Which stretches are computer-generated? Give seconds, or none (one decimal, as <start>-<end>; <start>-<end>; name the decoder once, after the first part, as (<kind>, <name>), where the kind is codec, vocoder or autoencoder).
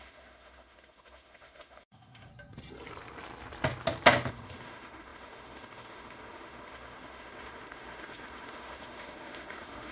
0.0-2.3 (autoencoder, DAC-VAE); 4.3-9.9